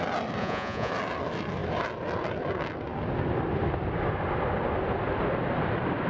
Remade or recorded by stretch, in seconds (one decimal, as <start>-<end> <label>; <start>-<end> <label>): 0.0-0.4 recorded; 0.4-0.9 remade; 0.9-6.1 recorded